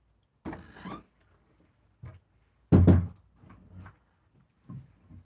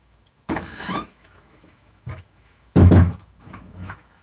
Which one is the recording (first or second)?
first